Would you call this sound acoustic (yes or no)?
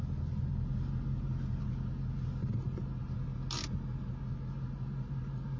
yes